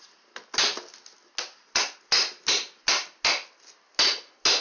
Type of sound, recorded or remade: recorded